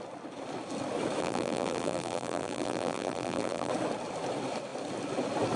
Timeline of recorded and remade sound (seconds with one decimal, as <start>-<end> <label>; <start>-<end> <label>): 0.0-1.2 recorded; 1.2-3.7 remade; 3.7-5.6 recorded